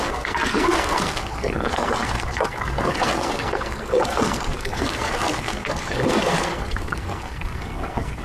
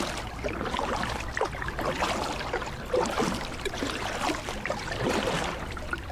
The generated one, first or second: first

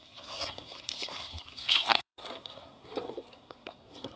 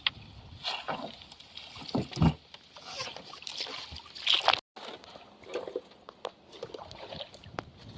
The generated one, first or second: first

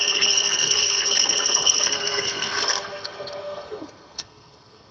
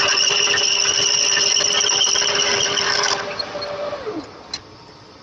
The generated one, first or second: first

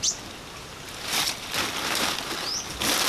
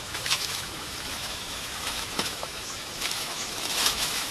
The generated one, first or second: second